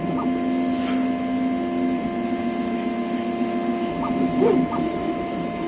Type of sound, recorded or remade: recorded